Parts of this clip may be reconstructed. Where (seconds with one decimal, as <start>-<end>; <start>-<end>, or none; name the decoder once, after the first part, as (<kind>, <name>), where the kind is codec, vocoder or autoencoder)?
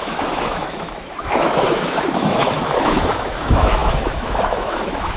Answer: 0.0-5.2 (autoencoder, DAC-VAE)